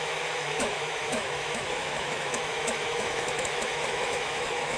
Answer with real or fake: fake